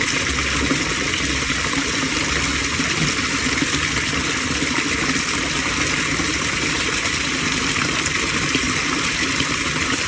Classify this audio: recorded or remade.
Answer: recorded